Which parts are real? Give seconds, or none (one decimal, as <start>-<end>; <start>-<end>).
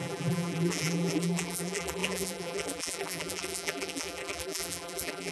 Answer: none